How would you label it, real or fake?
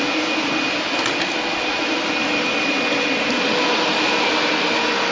real